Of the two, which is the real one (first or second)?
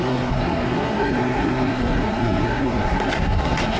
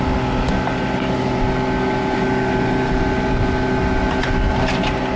second